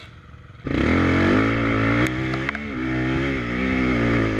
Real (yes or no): yes